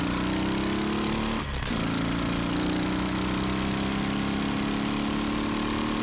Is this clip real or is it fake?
real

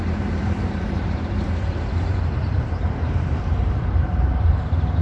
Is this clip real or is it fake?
fake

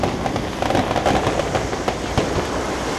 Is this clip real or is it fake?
real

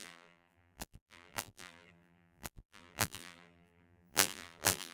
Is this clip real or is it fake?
fake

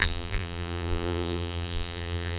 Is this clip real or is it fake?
fake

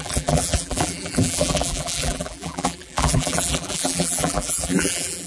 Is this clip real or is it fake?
fake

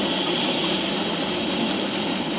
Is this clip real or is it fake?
fake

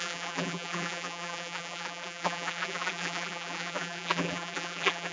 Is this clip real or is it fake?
fake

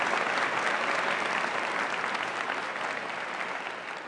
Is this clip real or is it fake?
real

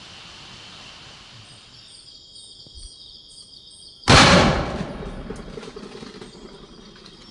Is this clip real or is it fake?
real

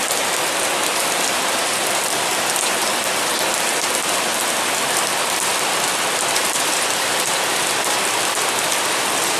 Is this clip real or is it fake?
fake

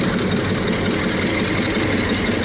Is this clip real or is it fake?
real